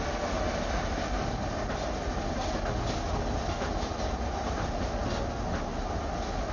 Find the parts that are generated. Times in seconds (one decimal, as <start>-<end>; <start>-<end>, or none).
none